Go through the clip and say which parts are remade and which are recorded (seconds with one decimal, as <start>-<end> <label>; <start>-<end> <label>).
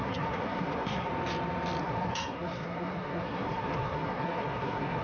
0.0-1.1 remade; 1.1-1.8 recorded; 1.8-5.0 remade